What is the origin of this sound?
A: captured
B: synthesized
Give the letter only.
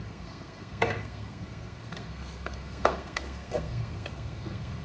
B